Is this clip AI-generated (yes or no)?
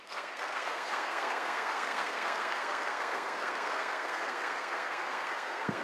yes